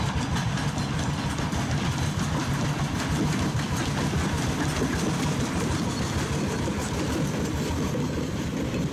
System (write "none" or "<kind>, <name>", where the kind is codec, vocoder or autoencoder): none